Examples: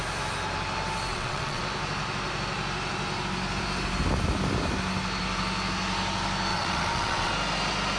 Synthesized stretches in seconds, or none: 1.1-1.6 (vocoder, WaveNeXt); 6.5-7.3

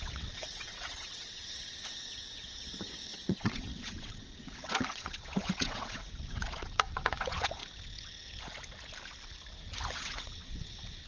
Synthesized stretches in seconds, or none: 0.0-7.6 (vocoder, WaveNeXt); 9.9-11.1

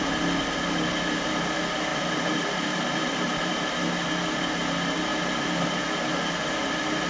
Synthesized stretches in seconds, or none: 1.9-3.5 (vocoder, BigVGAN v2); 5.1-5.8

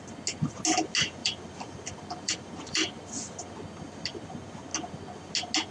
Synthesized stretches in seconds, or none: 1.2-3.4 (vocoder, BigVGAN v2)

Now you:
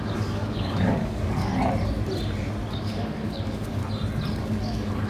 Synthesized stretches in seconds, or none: 0.0-1.5 (codec, DAC); 2.7-3.8; 4.3-5.1

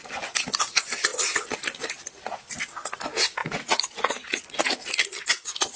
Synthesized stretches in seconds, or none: 3.4-4.9 (vocoder, Vocos)

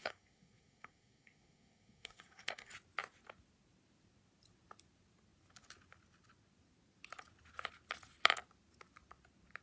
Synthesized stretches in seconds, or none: 0.0-2.7 (codec, SNAC)

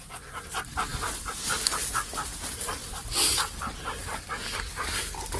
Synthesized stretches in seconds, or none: none